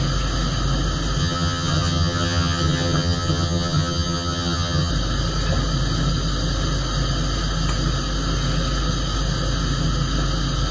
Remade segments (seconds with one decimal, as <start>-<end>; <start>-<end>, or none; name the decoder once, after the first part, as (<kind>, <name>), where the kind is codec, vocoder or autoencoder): 1.2-4.9 (vocoder, HiFi-GAN)